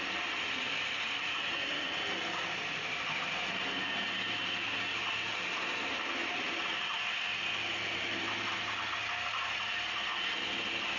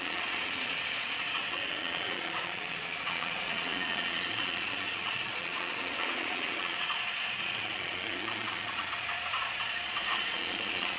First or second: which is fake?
second